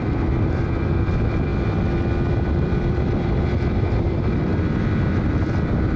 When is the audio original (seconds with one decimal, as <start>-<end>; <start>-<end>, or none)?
1.5-2.3; 4.5-5.3